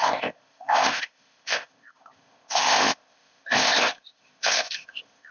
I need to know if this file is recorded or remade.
remade